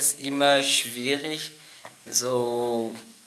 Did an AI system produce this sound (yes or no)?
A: yes